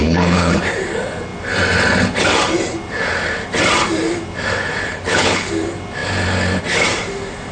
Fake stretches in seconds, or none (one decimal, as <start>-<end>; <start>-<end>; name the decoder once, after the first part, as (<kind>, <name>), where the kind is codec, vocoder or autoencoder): 0.0-0.6 (codec, HILCodec); 4.9-5.5